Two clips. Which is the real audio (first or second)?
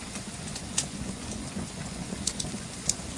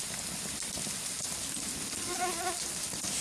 second